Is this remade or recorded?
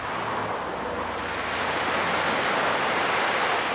recorded